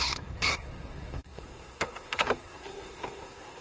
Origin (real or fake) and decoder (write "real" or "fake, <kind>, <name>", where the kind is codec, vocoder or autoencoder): fake, codec, SNAC